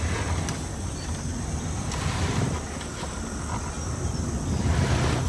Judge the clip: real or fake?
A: real